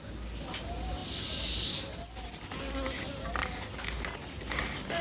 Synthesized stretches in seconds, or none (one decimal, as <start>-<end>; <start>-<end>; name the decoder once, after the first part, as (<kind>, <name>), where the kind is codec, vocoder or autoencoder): none